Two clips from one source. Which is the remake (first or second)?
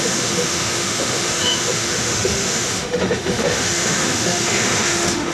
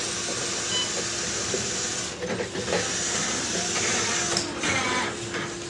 first